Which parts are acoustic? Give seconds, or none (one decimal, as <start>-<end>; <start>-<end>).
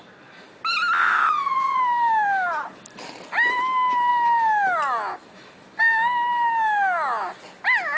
0.0-1.0; 1.8-8.0